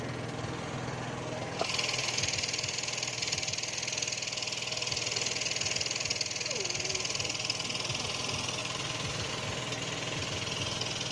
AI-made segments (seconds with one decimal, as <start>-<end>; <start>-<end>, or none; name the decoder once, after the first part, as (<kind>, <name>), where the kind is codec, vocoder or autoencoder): 8.6-9.3 (vocoder, BigVGAN v2)